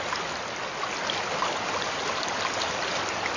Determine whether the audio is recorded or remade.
recorded